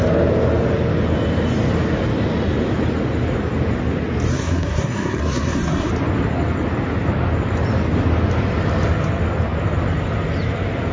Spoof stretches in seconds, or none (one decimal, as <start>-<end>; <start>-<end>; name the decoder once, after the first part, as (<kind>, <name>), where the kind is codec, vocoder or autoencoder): 4.3-5.9 (codec, SNAC)